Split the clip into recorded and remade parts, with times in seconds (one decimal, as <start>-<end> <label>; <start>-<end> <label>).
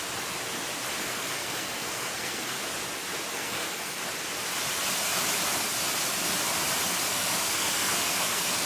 0.0-1.0 recorded; 1.0-2.6 remade; 2.6-3.3 recorded; 3.3-4.0 remade; 4.0-7.1 recorded; 7.1-8.7 remade